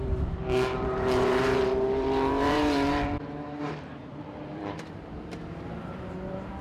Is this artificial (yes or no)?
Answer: yes